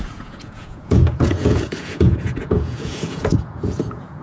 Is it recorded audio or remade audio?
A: remade